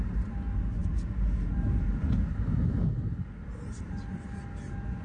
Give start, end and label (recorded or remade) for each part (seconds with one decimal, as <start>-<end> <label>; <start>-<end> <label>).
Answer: 0.0-5.0 recorded